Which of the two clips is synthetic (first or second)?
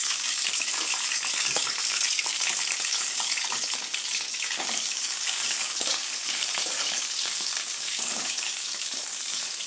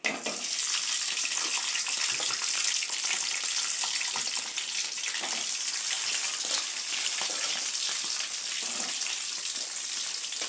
first